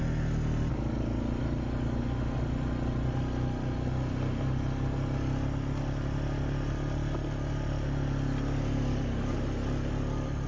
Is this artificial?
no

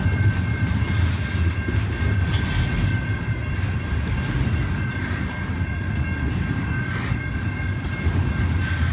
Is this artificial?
no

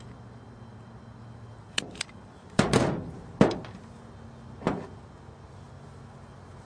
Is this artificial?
no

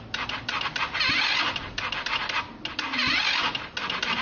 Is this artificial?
no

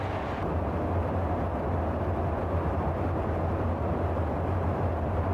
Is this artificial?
no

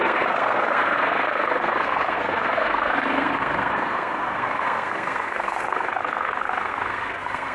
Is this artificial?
yes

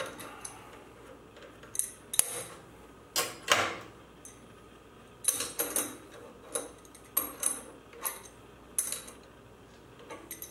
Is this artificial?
no